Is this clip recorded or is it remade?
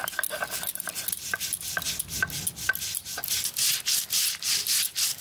recorded